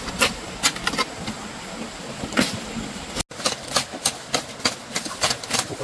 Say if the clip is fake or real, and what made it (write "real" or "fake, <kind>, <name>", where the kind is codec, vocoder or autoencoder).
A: real